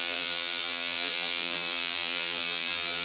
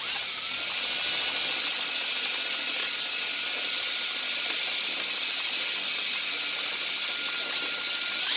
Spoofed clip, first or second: first